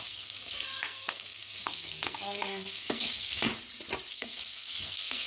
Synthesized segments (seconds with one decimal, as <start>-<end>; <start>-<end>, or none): 0.0-3.5; 4.1-5.3